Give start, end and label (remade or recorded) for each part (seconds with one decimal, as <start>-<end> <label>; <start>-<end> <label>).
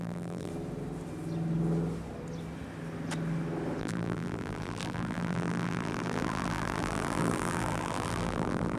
0.0-0.5 remade; 0.5-3.8 recorded; 3.8-8.8 remade